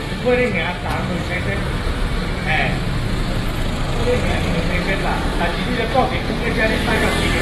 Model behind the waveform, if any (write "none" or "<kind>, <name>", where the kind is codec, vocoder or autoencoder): none